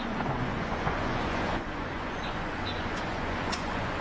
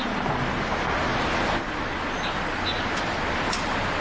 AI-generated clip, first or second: first